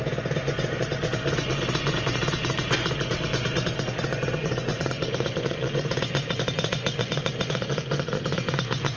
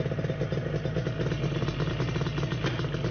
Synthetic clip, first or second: first